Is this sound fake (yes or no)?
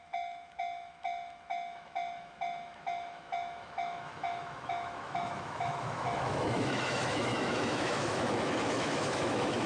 yes